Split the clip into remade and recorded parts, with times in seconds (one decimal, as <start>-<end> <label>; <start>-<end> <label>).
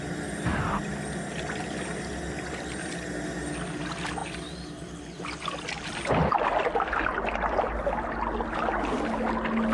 0.0-9.7 recorded